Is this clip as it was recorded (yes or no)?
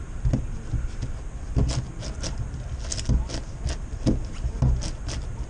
yes